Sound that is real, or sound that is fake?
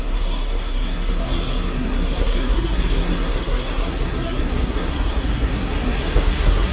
fake